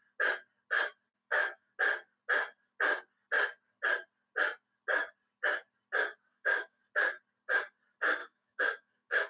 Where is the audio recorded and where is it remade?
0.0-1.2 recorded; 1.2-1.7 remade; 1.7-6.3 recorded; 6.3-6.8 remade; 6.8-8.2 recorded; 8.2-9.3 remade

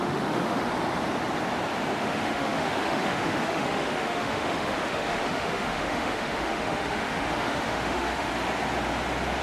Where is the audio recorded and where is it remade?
0.0-0.7 remade; 0.7-2.0 recorded; 2.0-8.3 remade; 8.3-9.4 recorded

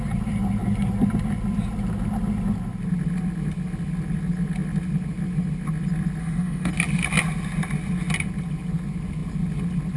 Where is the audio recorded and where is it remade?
0.0-6.2 recorded; 6.2-6.7 remade; 6.7-10.0 recorded

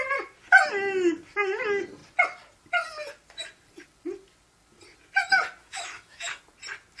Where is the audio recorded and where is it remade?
0.0-5.6 recorded; 5.6-6.4 remade; 6.4-7.0 recorded

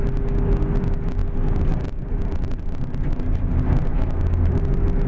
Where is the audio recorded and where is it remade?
0.0-3.9 recorded; 3.9-4.6 remade; 4.6-5.1 recorded